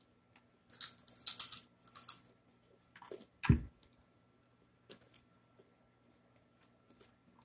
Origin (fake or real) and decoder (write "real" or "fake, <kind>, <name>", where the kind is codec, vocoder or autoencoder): real